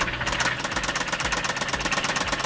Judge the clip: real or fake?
real